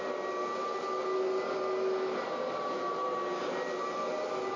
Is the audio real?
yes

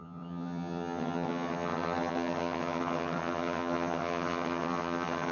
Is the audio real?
no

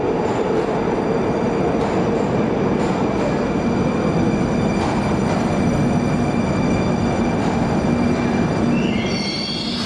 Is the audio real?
yes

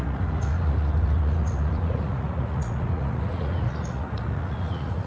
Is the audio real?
no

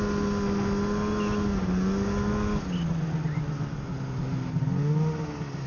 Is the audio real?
yes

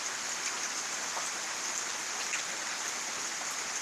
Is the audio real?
yes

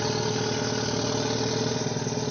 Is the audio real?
yes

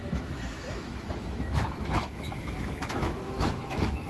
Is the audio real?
no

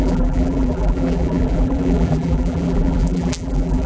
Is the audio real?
no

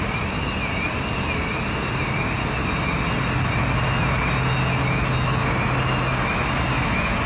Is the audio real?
yes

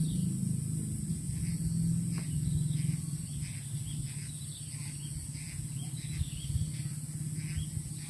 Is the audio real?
yes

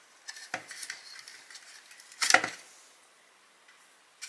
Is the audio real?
yes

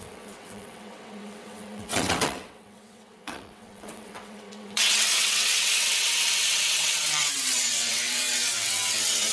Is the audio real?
no